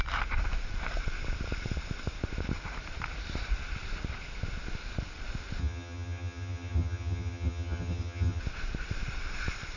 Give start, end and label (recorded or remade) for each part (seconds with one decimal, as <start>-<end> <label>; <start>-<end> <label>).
0.0-5.6 recorded; 5.6-8.4 remade; 8.4-9.8 recorded